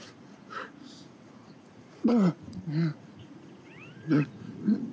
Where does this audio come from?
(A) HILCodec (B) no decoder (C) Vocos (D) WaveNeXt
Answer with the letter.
C